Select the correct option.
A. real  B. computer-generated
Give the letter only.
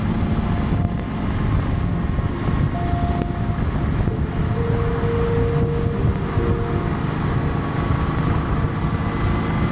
A